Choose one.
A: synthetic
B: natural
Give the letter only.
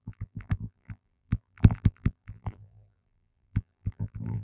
A